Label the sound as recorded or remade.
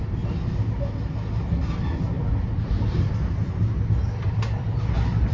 recorded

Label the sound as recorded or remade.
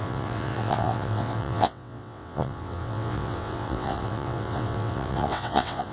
remade